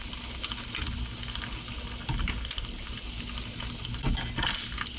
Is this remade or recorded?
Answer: recorded